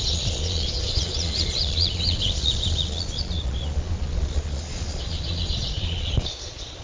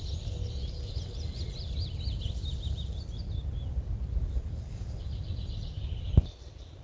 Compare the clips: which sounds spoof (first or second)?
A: first